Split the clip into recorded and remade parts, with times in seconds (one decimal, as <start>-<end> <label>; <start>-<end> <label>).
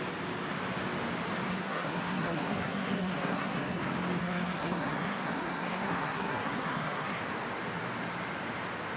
0.0-1.5 recorded; 1.5-3.8 remade; 3.8-4.2 recorded; 4.2-7.2 remade; 7.2-9.0 recorded